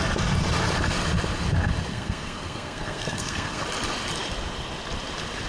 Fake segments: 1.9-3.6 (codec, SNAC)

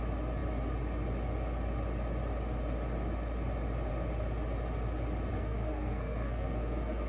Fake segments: 5.3-7.1 (codec, SNAC)

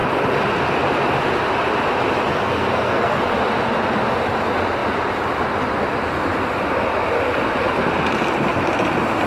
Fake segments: 2.3-3.2 (codec, SNAC)

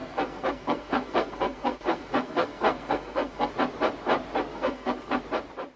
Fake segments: 0.0-3.5 (codec, SNAC); 4.5-5.2

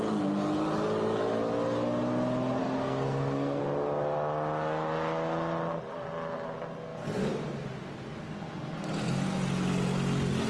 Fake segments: 2.6-3.6 (codec, SNAC)